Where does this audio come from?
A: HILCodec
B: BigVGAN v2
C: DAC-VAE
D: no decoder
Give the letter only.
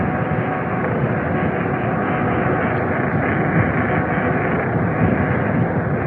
D